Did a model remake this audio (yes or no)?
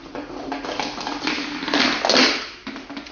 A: no